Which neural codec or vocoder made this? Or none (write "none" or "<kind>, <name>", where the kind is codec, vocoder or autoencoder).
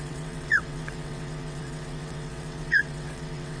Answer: vocoder, WaveNeXt